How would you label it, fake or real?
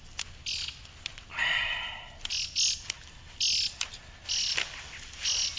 real